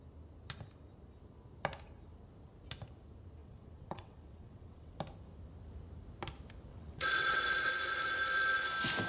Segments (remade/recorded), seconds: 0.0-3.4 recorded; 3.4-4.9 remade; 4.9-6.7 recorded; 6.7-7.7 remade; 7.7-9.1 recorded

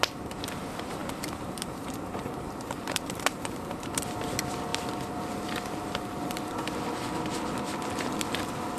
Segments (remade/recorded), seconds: 0.0-1.0 recorded; 1.0-4.0 remade; 4.0-8.8 recorded

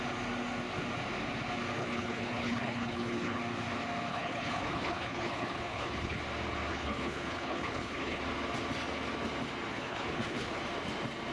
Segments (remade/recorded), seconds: 0.0-1.8 recorded; 1.8-3.4 remade; 3.4-4.1 recorded; 4.1-6.2 remade; 6.2-6.7 recorded; 6.7-8.2 remade; 8.2-9.7 recorded; 9.7-10.6 remade; 10.6-11.3 recorded